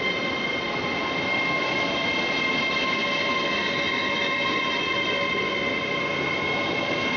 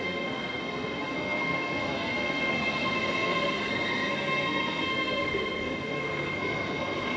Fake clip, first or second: second